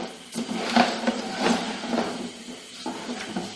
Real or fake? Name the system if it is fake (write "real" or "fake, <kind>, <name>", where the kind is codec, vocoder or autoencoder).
real